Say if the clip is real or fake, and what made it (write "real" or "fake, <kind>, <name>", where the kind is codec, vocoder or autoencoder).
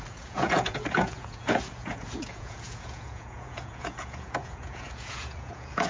fake, vocoder, Vocos